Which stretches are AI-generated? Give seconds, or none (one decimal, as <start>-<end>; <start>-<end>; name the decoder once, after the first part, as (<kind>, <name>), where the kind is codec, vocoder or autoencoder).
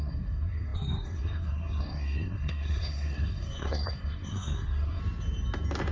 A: 0.0-5.0 (codec, SNAC)